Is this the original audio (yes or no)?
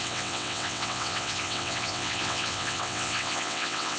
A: no